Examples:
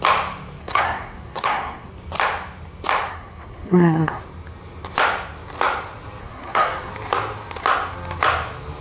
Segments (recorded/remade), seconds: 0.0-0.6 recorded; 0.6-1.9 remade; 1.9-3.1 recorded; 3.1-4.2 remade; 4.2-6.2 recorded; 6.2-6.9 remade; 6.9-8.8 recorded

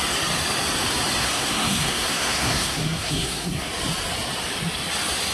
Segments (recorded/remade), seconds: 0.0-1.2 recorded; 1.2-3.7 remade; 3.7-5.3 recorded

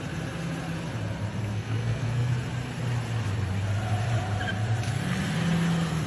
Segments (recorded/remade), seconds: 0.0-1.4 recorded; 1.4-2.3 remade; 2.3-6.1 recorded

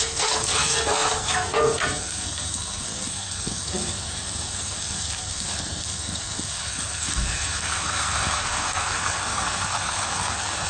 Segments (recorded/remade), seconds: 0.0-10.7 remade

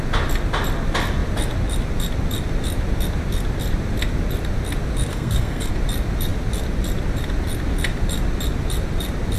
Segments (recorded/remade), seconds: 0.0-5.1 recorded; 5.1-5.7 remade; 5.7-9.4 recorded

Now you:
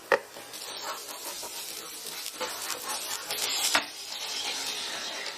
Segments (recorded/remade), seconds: 0.0-5.4 recorded